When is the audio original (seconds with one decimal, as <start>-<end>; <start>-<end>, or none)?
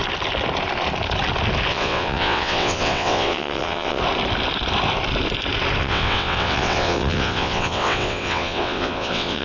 0.0-1.7; 4.0-5.8